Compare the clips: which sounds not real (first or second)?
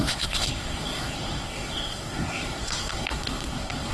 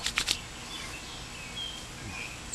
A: first